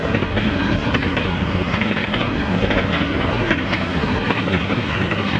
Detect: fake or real fake